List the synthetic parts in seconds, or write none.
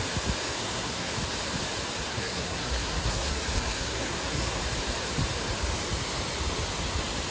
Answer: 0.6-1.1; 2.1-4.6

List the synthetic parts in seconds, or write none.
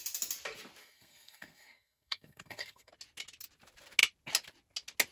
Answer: 0.8-2.9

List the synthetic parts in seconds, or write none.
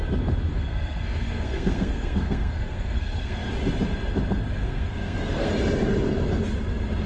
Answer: 0.5-3.5; 4.6-5.5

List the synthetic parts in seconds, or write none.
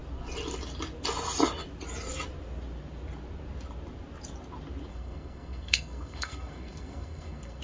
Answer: 4.9-7.6